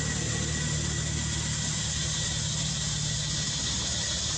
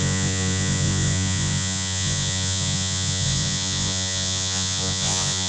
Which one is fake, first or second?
second